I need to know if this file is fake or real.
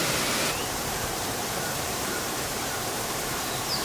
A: fake